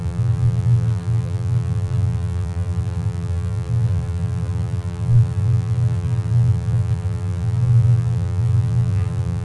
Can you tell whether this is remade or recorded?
remade